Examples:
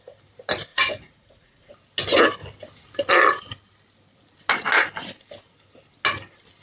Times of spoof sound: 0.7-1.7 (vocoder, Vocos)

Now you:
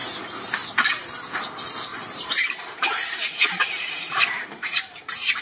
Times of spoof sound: 1.9-5.4 (vocoder, BigVGAN v2)

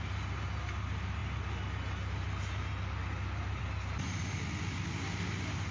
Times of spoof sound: none

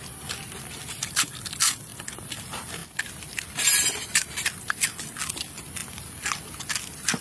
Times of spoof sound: 0.0-1.9 (vocoder, BigVGAN v2); 2.4-7.2

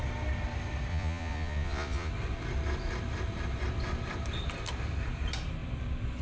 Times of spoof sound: 0.9-2.1 (vocoder, Vocos)

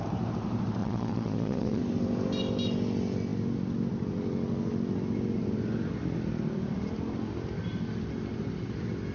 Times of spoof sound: 0.8-1.8 (vocoder, Vocos)